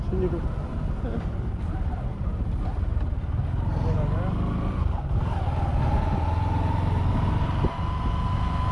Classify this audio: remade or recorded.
recorded